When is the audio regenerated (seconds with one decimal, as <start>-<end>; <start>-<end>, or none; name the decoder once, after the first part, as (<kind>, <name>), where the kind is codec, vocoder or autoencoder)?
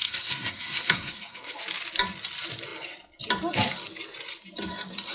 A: 0.0-1.6 (codec, SNAC)